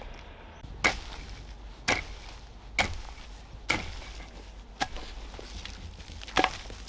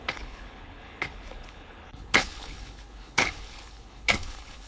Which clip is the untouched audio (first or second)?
first